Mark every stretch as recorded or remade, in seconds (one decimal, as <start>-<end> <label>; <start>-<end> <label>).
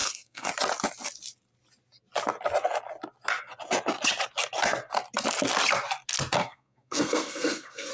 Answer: 0.0-0.5 remade; 0.5-6.4 recorded; 6.4-7.9 remade